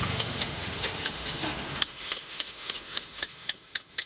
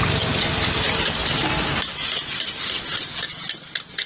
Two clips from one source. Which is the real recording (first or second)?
second